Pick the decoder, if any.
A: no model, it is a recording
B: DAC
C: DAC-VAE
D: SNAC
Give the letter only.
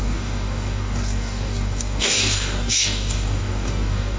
B